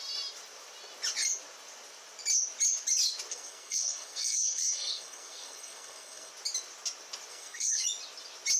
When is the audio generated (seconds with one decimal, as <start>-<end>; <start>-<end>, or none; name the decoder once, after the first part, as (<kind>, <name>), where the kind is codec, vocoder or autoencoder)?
3.3-6.3 (codec, SNAC); 7.3-7.8